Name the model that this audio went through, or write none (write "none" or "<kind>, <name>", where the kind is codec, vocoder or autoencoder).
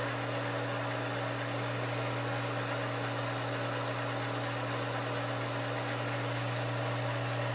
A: none